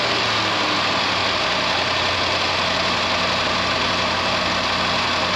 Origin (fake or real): real